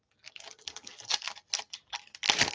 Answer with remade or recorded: recorded